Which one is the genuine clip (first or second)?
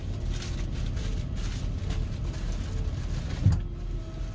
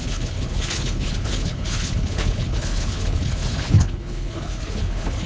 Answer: first